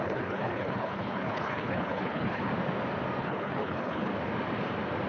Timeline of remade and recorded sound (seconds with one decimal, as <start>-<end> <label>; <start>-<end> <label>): 0.0-2.5 remade; 2.5-3.2 recorded; 3.2-4.1 remade; 4.1-5.1 recorded